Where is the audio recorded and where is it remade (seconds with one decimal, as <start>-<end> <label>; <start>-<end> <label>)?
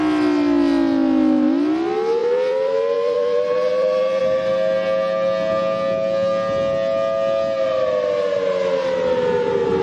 0.0-2.2 recorded; 2.2-4.2 remade; 4.2-9.8 recorded